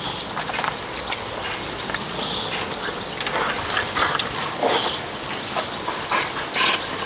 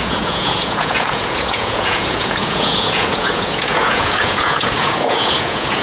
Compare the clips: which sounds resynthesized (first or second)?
second